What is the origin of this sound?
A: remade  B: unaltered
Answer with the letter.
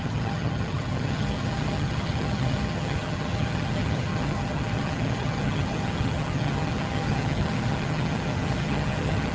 A